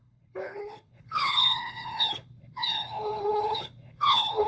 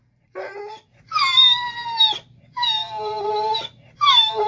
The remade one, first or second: first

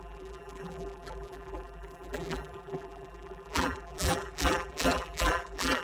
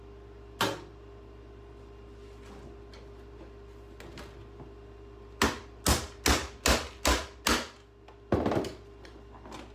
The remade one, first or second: first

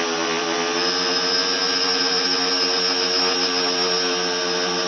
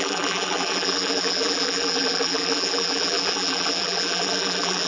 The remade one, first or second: second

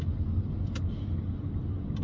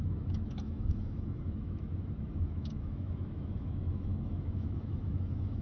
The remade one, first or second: second